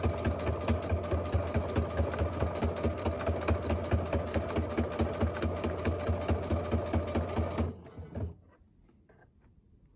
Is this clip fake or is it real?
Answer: real